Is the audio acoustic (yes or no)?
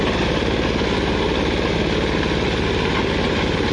yes